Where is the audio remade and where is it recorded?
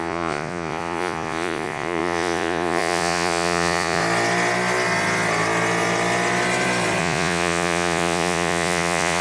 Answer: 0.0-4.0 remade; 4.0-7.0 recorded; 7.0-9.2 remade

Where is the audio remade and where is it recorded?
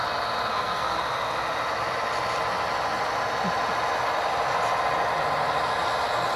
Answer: 0.0-0.5 recorded; 0.5-1.0 remade; 1.0-6.4 recorded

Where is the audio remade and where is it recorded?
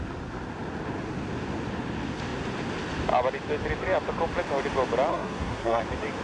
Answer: 0.0-5.1 recorded; 5.1-5.8 remade; 5.8-6.2 recorded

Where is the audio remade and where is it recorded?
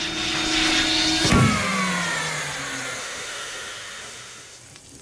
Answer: 0.0-3.0 recorded; 3.0-4.6 remade; 4.6-5.0 recorded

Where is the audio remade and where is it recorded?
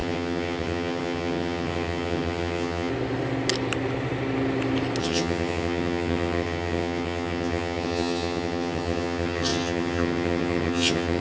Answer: 0.0-2.9 remade; 2.9-5.0 recorded; 5.0-11.2 remade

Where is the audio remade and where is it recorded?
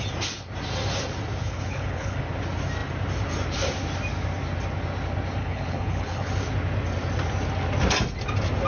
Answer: 0.0-1.4 recorded; 1.4-2.2 remade; 2.2-5.4 recorded; 5.4-6.3 remade; 6.3-8.7 recorded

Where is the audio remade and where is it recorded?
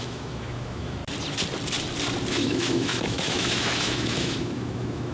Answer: 0.0-1.0 remade; 1.0-2.3 recorded; 2.3-5.1 remade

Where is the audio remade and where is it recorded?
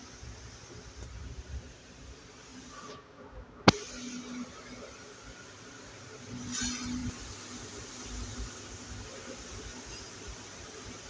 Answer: 0.0-11.1 recorded